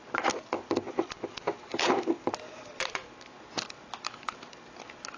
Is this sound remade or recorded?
recorded